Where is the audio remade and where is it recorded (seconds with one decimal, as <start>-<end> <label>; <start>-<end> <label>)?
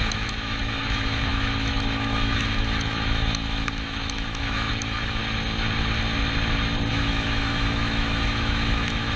0.0-5.2 remade; 5.2-6.9 recorded; 6.9-9.2 remade